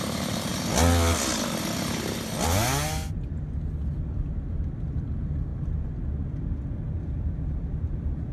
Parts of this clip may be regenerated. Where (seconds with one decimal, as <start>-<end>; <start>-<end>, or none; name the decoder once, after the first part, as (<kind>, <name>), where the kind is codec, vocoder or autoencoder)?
0.0-0.5 (vocoder, BigVGAN v2); 4.5-5.5; 7.0-8.3